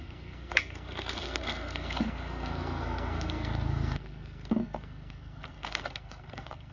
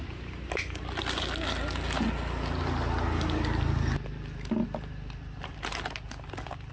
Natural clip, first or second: second